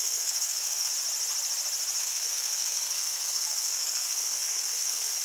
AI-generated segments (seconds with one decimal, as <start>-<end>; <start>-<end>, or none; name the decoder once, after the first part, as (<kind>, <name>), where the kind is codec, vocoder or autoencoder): 0.0-0.9 (codec, SNAC); 2.0-5.2